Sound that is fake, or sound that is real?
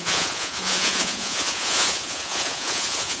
fake